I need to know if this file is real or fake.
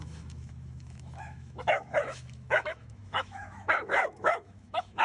fake